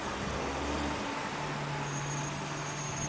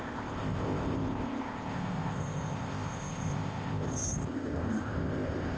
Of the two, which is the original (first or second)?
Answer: first